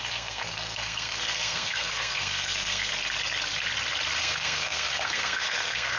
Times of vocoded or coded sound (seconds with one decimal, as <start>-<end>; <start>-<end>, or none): 0.0-2.9; 4.2-6.0